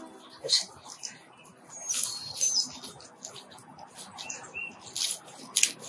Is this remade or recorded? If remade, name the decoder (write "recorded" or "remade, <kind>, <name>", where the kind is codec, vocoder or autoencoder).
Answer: recorded